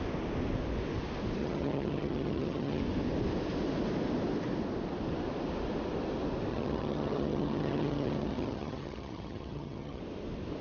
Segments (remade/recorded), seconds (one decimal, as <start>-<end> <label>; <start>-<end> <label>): 0.0-1.4 recorded; 1.4-2.8 remade; 2.8-6.5 recorded; 6.5-10.0 remade; 10.0-10.6 recorded

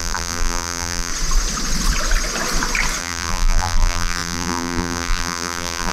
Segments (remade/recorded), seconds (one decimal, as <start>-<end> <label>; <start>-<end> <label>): 0.0-1.1 remade; 1.1-3.0 recorded; 3.0-5.9 remade

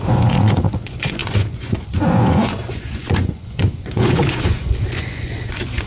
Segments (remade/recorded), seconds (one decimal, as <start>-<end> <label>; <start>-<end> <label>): 0.0-5.9 remade